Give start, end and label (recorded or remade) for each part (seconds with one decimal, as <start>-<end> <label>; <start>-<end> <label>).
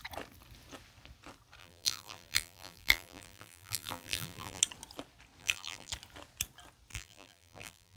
0.0-1.6 recorded; 1.6-4.6 remade; 4.6-5.4 recorded; 5.4-5.9 remade; 5.9-6.9 recorded; 6.9-8.0 remade